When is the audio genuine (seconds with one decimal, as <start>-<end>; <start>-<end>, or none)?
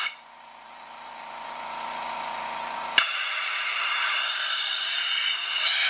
5.1-5.9